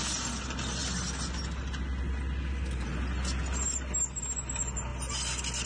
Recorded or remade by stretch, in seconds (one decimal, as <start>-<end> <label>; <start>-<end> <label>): 0.0-5.7 recorded

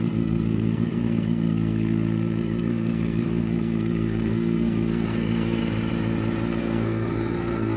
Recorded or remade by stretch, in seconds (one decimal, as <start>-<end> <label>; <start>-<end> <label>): 0.0-5.6 remade; 5.6-6.6 recorded; 6.6-7.8 remade